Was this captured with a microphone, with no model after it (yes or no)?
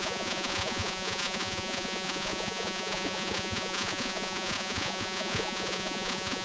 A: no